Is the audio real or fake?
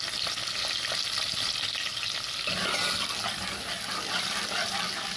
real